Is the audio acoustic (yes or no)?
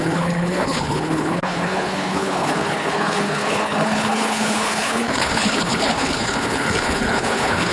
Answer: no